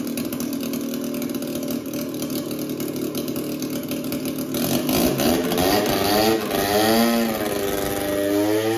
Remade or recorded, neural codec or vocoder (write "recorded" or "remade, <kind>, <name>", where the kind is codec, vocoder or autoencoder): recorded